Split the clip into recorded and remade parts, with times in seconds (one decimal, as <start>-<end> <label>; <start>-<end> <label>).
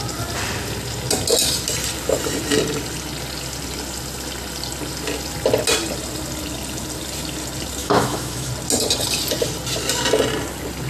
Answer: 0.0-7.8 recorded; 7.8-8.5 remade; 8.5-10.9 recorded